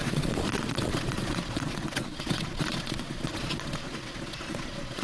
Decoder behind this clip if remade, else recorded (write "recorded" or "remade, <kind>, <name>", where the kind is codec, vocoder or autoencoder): remade, vocoder, Vocos